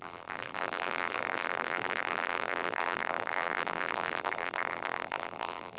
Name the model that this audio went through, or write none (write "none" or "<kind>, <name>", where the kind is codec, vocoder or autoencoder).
vocoder, BigVGAN v2